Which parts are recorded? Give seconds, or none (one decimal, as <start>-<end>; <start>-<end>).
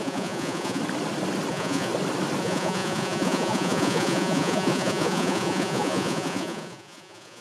0.8-1.5; 1.9-2.4